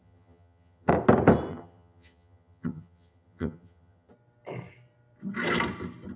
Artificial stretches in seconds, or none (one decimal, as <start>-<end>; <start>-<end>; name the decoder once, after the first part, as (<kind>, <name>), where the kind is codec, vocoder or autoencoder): 0.0-0.9 (vocoder, HiFi-GAN); 1.5-4.1